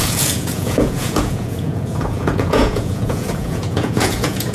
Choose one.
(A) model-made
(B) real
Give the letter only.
A